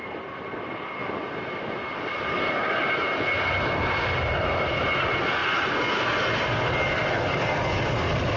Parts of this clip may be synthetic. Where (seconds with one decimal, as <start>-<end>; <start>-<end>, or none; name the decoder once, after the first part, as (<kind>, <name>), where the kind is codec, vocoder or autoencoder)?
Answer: none